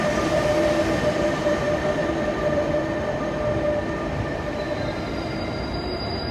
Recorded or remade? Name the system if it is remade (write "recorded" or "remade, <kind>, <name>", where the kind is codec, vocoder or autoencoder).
remade, vocoder, BigVGAN v2